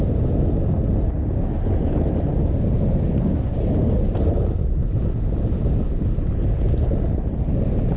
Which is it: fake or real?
real